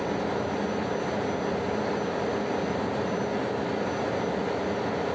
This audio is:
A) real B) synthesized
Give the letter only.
A